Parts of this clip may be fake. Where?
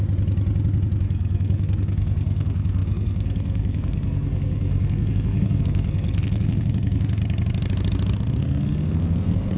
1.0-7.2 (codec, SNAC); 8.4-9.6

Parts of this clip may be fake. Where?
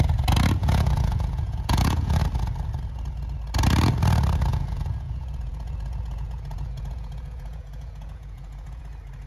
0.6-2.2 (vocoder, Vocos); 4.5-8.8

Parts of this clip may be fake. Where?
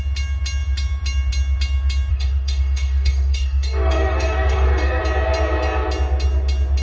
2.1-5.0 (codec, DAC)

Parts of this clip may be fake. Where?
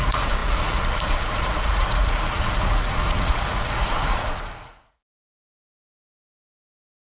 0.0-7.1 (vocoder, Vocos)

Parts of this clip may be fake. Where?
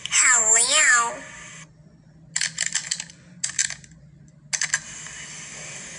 0.4-1.1 (autoencoder, DAC-VAE)